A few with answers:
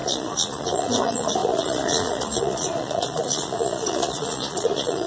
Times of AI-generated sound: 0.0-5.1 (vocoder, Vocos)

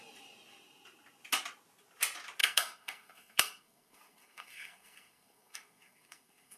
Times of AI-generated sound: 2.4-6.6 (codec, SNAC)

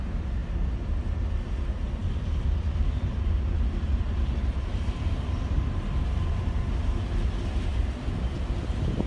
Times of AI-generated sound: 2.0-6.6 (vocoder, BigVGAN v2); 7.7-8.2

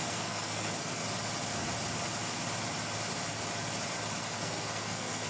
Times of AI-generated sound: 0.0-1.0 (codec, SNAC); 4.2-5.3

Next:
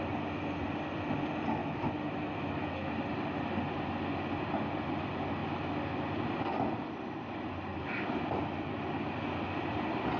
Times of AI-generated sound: 1.6-2.9 (autoencoder, DAC-VAE)

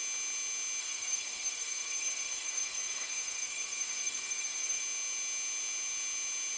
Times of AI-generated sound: 0.8-4.8 (codec, SNAC)

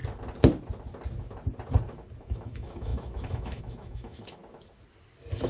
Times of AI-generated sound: 2.2-4.4 (autoencoder, DAC-VAE)

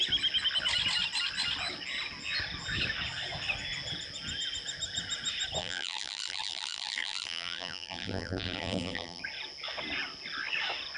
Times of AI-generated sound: 5.6-9.2 (vocoder, BigVGAN v2)